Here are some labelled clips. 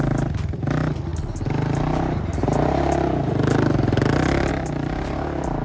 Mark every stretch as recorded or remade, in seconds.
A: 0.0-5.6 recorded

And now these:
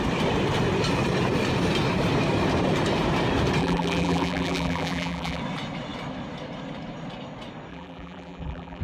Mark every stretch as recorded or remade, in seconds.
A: 0.0-3.6 recorded; 3.6-5.4 remade; 5.4-7.7 recorded; 7.7-8.8 remade

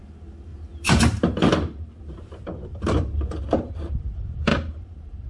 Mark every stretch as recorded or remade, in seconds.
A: 0.0-0.5 recorded; 0.5-3.7 remade; 3.7-4.5 recorded; 4.5-5.3 remade

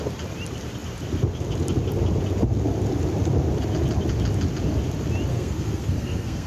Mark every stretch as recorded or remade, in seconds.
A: 0.0-5.3 recorded; 5.3-6.5 remade

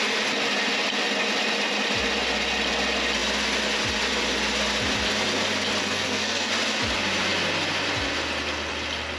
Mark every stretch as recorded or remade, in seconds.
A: 0.0-5.8 recorded; 5.8-6.5 remade; 6.5-9.2 recorded

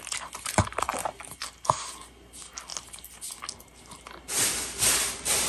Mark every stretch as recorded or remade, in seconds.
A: 0.0-5.5 recorded

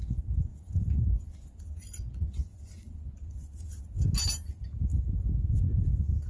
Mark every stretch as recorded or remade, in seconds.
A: 0.0-0.5 recorded; 0.5-3.8 remade; 3.8-6.3 recorded